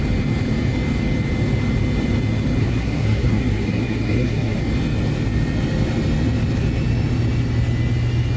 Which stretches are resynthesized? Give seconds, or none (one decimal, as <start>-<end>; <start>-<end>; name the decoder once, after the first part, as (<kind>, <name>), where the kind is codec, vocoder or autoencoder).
2.6-4.6 (codec, SNAC)